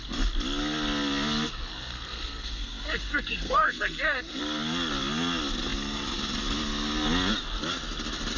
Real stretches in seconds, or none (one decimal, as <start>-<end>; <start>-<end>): 0.0-1.7; 4.4-8.4